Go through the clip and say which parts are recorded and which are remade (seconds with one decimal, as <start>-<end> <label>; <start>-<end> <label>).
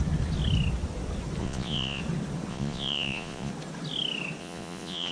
0.0-1.4 recorded; 1.4-2.0 remade; 2.0-2.5 recorded; 2.5-3.5 remade; 3.5-4.4 recorded; 4.4-5.1 remade